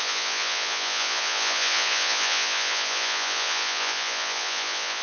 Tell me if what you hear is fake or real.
fake